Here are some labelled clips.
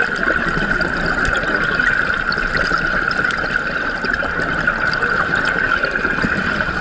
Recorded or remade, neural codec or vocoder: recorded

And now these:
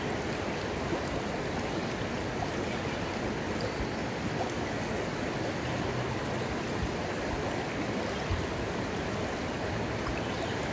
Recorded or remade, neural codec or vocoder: recorded